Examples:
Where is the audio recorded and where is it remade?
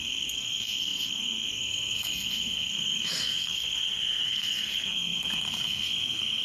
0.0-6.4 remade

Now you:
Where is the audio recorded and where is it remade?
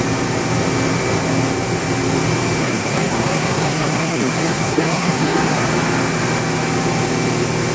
0.0-2.6 recorded; 2.6-5.7 remade; 5.7-7.7 recorded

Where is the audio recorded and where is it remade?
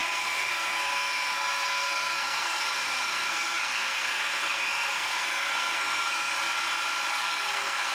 0.0-6.3 remade; 6.3-7.1 recorded; 7.1-7.9 remade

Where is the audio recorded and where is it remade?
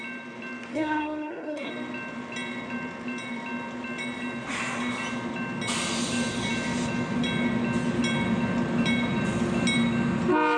0.0-0.7 recorded; 0.7-1.7 remade; 1.7-10.6 recorded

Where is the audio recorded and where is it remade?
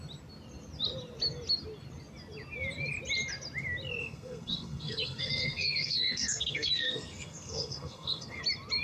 0.0-4.0 recorded; 4.0-8.4 remade; 8.4-8.8 recorded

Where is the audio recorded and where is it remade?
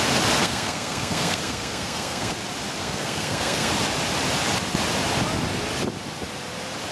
0.0-0.4 recorded; 0.4-2.3 remade; 2.3-2.8 recorded; 2.8-3.7 remade; 3.7-6.9 recorded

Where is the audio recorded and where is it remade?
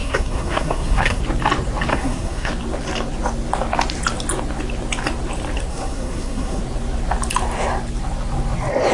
0.0-1.2 remade; 1.2-1.9 recorded; 1.9-2.5 remade; 2.5-5.7 recorded; 5.7-6.6 remade; 6.6-8.9 recorded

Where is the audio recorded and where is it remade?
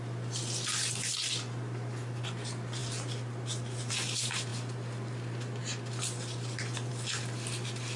0.0-8.0 recorded